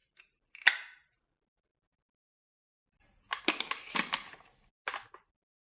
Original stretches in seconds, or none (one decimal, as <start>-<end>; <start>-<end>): 0.0-5.6